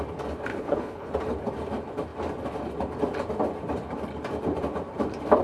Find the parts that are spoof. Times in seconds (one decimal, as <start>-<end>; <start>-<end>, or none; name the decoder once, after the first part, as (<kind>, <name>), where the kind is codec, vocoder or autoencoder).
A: 0.5-1.1 (codec, HILCodec)